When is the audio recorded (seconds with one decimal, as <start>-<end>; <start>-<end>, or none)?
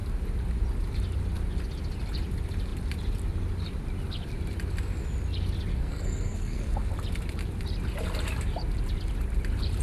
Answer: 0.0-5.7; 6.9-9.8